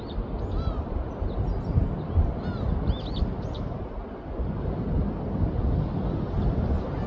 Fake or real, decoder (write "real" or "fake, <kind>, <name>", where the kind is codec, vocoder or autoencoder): real